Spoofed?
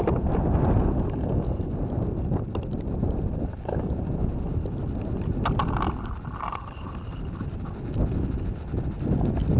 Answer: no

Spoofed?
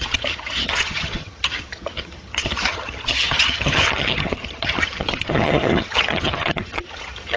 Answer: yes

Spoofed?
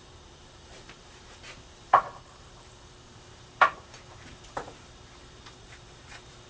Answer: yes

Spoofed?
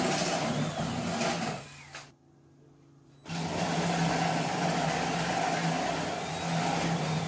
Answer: no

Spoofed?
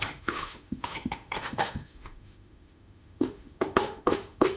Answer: yes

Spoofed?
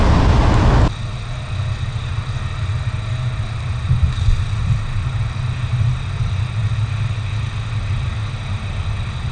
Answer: no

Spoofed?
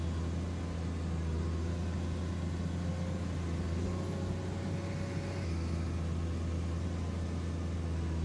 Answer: no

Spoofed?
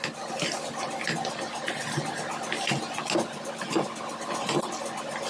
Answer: no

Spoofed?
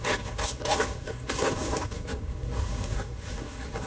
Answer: yes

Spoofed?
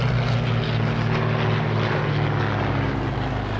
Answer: no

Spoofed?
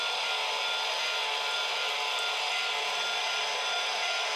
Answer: no